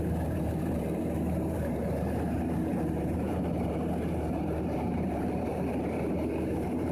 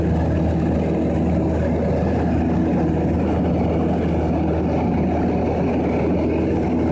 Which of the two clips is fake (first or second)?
first